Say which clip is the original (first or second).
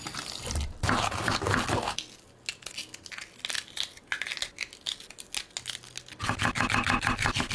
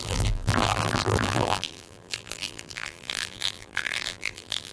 first